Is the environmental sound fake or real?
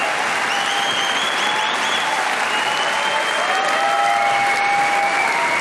real